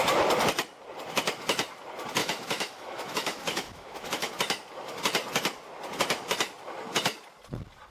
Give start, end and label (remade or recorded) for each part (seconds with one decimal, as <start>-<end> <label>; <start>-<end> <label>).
0.0-2.2 recorded; 2.2-4.3 remade; 4.3-7.9 recorded